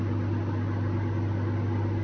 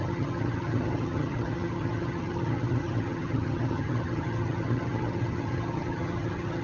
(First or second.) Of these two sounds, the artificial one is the second